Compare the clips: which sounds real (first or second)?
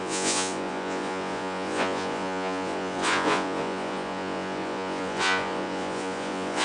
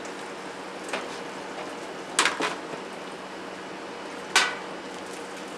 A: second